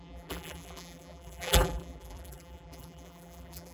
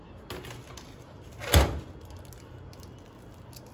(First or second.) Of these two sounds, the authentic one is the second